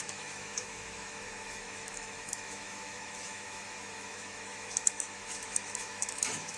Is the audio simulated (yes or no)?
yes